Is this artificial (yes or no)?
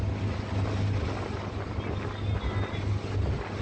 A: no